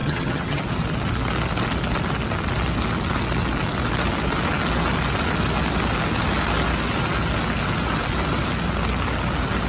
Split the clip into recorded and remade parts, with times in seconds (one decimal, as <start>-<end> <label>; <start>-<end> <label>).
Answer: 0.0-0.6 remade; 0.6-9.7 recorded